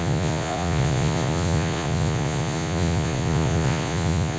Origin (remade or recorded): remade